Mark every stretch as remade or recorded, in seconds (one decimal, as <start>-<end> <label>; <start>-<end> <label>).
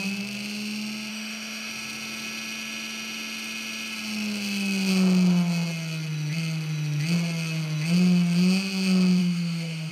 0.0-1.1 recorded; 1.1-1.7 remade; 1.7-9.2 recorded; 9.2-9.9 remade